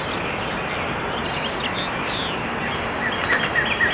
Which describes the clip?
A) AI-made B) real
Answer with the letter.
B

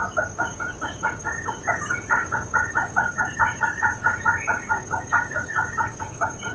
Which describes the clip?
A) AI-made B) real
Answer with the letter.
A